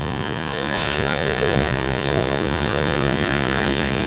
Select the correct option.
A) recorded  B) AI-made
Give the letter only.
B